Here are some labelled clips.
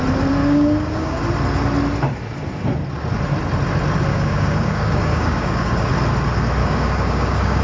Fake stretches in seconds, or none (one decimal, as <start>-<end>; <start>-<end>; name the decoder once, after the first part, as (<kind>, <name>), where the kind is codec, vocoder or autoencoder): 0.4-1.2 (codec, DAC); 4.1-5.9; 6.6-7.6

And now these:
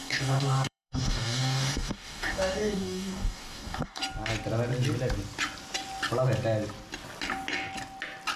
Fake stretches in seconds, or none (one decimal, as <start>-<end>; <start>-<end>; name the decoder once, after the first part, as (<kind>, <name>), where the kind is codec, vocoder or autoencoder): 0.0-4.0 (codec, DAC)

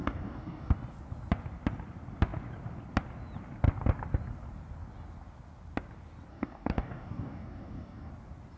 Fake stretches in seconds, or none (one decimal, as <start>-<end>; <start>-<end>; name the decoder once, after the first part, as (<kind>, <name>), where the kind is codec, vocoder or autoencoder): 0.0-0.7 (codec, DAC); 6.3-8.1

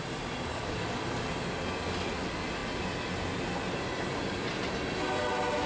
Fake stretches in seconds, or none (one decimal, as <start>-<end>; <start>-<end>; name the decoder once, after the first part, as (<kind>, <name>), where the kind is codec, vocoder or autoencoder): 0.5-1.0 (codec, DAC)

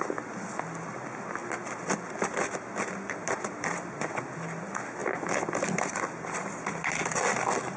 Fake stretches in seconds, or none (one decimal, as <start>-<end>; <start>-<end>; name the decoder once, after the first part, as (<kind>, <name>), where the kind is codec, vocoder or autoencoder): none

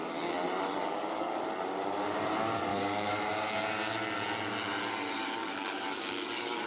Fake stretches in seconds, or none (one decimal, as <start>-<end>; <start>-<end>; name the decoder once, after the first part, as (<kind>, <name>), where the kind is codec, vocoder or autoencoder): 0.8-1.4 (codec, DAC); 2.7-3.3; 5.4-6.7

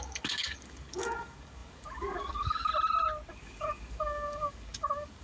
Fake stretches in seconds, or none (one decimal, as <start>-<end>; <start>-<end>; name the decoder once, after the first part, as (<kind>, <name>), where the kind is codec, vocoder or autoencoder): 0.0-2.7 (codec, DAC); 3.3-5.2

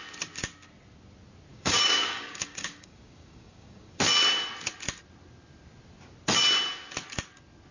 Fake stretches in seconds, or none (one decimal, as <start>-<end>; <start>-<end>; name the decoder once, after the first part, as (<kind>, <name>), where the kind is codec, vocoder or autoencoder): 1.5-4.0 (codec, DAC)